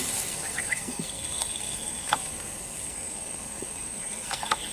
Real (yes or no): no